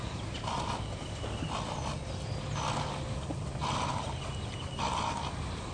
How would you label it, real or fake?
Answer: real